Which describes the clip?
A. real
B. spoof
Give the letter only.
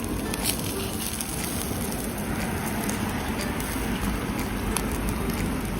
A